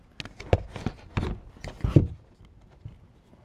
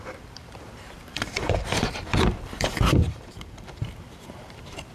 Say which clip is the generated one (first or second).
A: second